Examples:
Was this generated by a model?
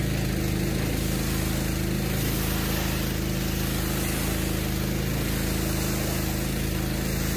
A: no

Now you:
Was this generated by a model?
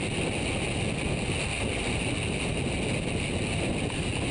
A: no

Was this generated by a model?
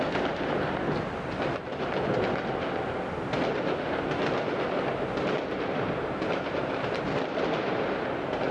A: no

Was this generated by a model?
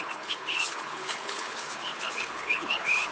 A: yes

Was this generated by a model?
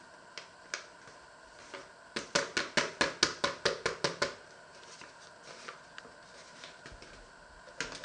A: no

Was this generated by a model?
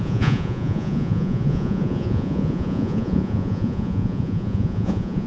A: yes